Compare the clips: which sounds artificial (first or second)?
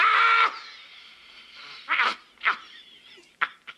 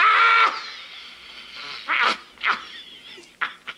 first